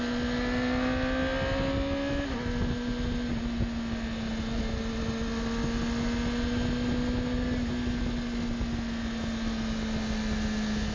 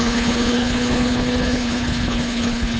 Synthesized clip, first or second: second